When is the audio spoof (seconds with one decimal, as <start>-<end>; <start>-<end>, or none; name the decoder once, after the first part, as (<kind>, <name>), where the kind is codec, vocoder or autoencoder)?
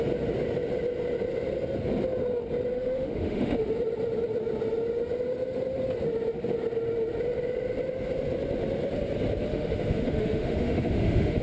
2.7-3.6 (autoencoder, DAC-VAE); 9.5-11.4